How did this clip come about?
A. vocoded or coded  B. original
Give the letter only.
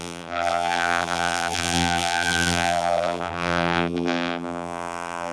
A